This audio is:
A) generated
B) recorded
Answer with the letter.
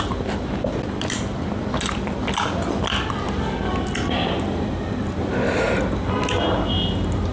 B